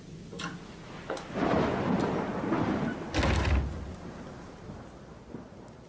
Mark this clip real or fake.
real